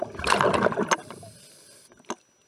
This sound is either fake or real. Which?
real